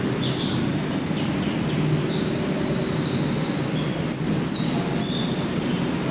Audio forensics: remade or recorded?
recorded